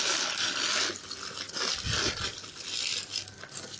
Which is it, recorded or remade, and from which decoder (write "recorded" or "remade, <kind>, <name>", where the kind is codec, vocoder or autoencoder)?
recorded